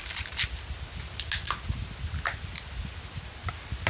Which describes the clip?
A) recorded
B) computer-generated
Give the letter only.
A